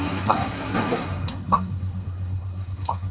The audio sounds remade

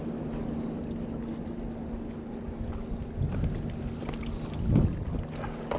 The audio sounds recorded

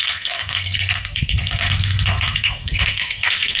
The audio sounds remade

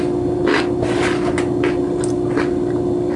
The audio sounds recorded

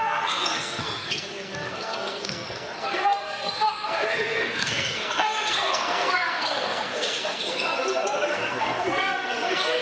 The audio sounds remade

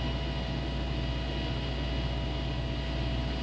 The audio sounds recorded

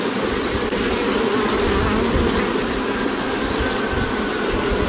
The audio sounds recorded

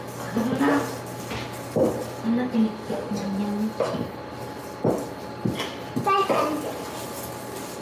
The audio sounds recorded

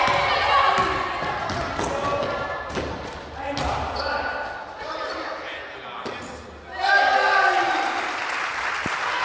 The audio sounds recorded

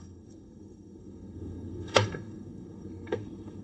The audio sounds remade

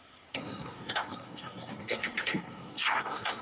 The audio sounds remade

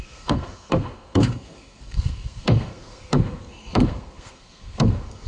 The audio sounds remade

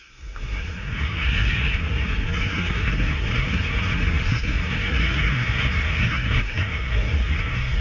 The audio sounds remade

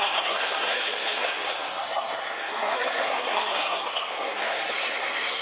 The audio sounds remade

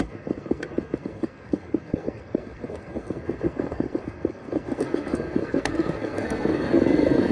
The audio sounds remade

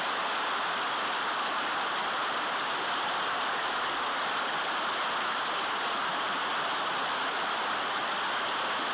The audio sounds recorded